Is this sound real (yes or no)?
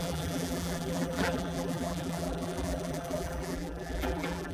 no